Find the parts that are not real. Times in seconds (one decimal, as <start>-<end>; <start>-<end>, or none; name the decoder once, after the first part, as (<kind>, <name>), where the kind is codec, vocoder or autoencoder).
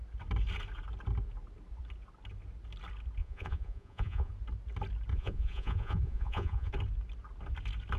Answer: 3.2-4.3 (vocoder, Vocos); 5.1-6.7